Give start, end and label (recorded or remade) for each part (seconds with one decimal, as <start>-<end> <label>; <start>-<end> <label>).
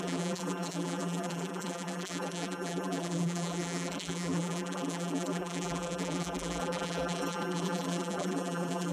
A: 0.0-8.9 remade